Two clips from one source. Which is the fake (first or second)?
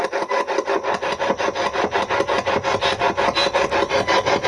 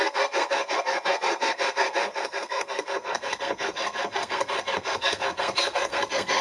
second